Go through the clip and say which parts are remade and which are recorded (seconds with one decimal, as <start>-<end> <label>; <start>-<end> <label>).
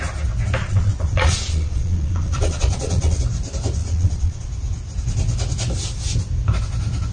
0.0-0.6 recorded; 0.6-3.2 remade; 3.2-3.8 recorded; 3.8-4.5 remade; 4.5-7.1 recorded